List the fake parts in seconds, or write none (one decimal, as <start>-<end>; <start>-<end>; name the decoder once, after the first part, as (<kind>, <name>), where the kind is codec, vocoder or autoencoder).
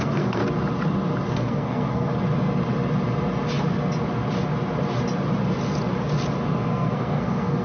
0.0-0.4 (codec, SNAC); 1.3-2.1; 6.7-7.6